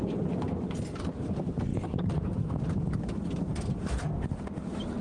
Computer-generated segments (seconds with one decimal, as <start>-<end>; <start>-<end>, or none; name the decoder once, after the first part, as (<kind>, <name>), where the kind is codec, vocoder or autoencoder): none